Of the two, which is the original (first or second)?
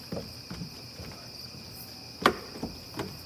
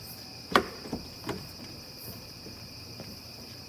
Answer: first